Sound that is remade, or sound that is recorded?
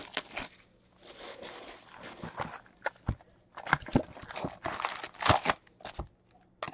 recorded